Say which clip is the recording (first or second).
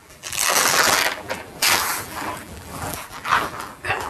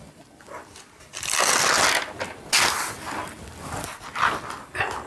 second